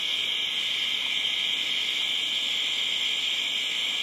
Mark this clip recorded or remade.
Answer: recorded